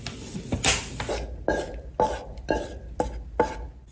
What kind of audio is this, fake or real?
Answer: real